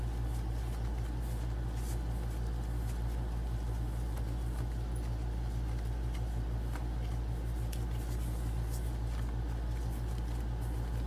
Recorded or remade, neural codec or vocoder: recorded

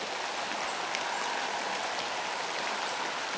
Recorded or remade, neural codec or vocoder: recorded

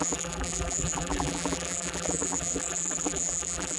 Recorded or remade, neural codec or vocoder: remade, vocoder, BigVGAN v2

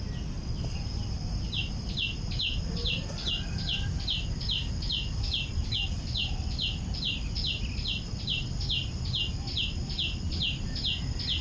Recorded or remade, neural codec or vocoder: recorded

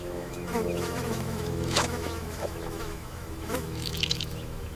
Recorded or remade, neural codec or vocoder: remade, autoencoder, DAC-VAE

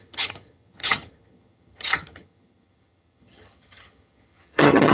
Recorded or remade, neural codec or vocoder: remade, vocoder, HiFi-GAN